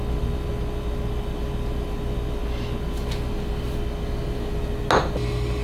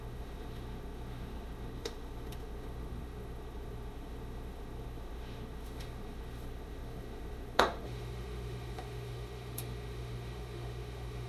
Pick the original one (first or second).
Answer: first